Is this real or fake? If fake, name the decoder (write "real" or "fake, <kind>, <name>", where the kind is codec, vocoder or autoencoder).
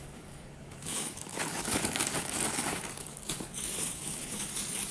fake, codec, DAC